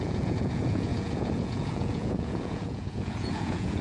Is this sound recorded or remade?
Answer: remade